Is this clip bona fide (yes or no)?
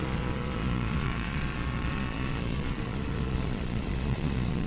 no